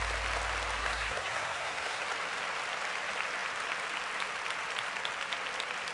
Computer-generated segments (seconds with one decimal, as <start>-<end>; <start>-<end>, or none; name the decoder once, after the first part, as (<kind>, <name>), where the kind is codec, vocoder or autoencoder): 0.8-2.0 (codec, SNAC)